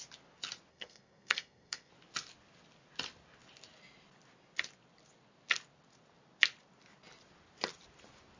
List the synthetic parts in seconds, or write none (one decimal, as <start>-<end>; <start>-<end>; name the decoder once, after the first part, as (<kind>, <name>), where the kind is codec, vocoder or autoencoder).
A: 0.7-1.9 (codec, SNAC)